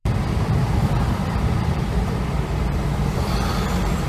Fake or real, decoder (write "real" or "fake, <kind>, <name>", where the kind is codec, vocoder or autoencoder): fake, vocoder, BigVGAN v2